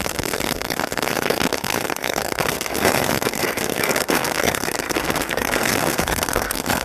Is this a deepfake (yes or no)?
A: yes